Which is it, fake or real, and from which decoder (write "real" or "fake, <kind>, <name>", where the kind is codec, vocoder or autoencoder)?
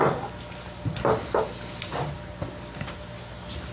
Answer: real